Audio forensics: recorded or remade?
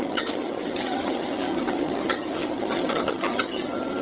remade